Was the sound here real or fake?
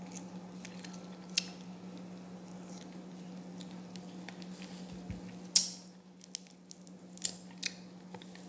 real